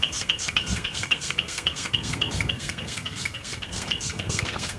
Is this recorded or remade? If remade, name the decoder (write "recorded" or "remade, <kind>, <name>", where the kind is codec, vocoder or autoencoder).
remade, codec, SNAC